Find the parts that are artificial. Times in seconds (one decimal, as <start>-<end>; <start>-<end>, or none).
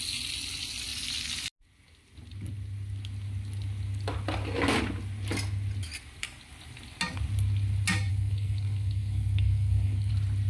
8.1-10.1